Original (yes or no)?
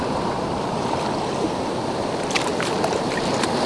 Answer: no